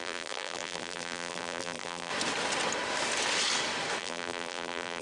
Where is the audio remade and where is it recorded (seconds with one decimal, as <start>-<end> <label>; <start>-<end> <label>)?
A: 0.0-2.1 remade; 2.1-4.0 recorded; 4.0-5.0 remade